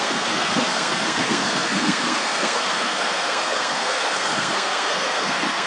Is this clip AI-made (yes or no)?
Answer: yes